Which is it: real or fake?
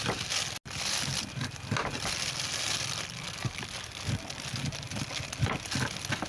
real